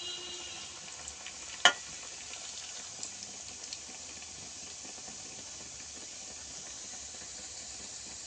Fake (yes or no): no